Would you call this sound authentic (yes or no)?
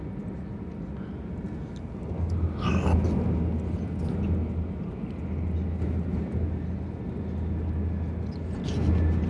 yes